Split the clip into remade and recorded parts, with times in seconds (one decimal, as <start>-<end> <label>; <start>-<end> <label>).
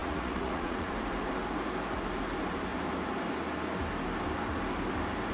0.0-0.9 remade; 0.9-5.3 recorded